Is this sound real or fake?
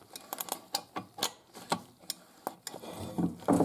real